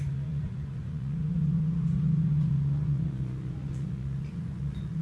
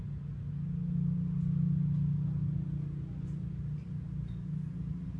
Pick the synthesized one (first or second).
first